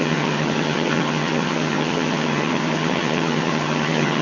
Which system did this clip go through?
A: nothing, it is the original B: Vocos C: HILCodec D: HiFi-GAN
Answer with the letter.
D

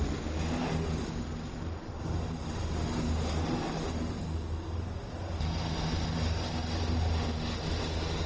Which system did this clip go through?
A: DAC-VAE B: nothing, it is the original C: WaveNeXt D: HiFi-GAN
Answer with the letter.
B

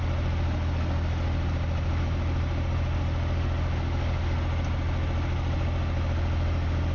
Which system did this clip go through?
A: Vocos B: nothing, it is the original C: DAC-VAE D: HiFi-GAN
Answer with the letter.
B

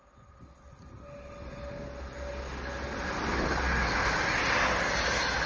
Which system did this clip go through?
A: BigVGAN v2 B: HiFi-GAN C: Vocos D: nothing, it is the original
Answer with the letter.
D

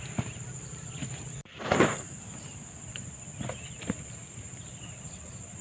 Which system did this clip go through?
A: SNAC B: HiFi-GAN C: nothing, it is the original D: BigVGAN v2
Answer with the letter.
C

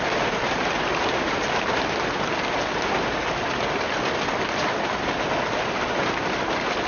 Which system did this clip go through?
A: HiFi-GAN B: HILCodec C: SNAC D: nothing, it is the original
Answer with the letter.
D